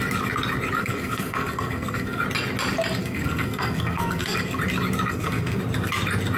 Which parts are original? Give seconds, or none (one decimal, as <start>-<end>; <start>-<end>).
0.0-0.8; 2.2-3.0; 4.6-5.1; 5.6-6.4